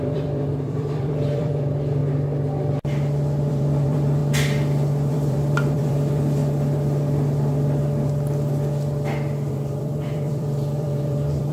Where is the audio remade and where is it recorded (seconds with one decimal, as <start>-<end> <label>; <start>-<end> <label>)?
0.0-2.0 remade; 2.0-3.5 recorded; 3.5-4.2 remade; 4.2-5.1 recorded; 5.1-6.4 remade; 6.4-9.5 recorded; 9.5-11.5 remade